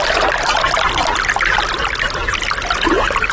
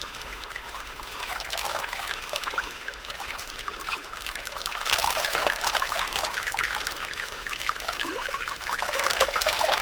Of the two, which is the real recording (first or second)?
first